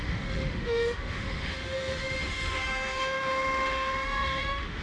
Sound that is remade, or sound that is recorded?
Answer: remade